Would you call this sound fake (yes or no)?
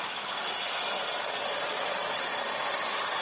no